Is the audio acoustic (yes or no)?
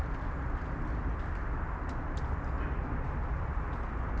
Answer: yes